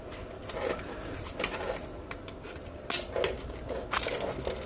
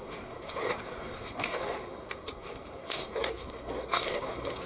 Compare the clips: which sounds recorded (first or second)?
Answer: first